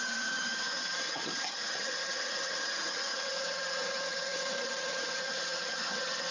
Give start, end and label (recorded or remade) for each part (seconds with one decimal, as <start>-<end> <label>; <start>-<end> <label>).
0.0-6.3 remade